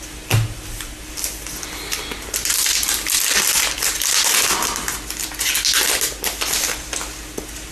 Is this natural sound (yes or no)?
yes